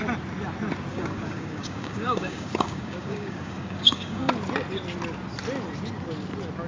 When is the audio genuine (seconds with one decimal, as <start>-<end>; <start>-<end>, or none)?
0.0-0.9; 4.3-6.7